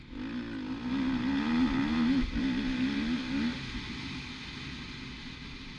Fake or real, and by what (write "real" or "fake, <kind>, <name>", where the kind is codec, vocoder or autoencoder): real